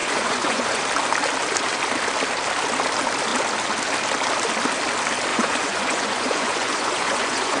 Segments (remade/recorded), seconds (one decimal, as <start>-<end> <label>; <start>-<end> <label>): 0.0-0.8 remade; 0.8-5.3 recorded; 5.3-7.6 remade